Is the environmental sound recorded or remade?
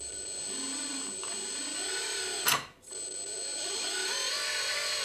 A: recorded